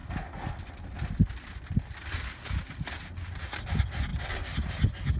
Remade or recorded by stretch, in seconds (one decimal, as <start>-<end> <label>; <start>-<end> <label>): 0.0-5.2 recorded